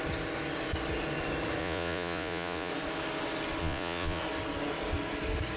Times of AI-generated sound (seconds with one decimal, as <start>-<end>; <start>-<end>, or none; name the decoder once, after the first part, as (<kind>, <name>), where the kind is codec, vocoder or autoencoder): 1.6-2.7 (vocoder, Vocos); 3.6-4.2